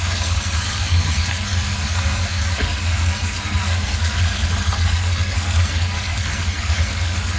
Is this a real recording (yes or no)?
no